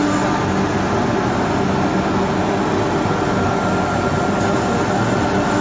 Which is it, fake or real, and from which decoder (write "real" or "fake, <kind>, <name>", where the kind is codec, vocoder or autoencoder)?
real